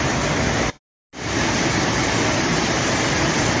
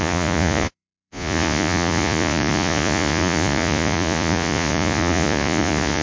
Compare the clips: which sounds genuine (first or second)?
first